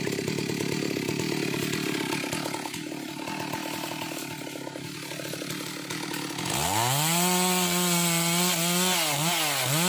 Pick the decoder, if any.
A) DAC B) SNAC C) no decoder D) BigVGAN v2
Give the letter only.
C